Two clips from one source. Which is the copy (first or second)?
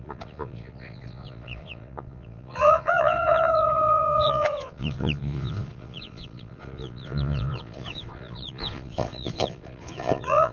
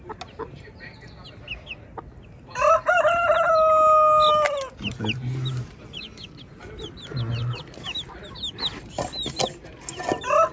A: first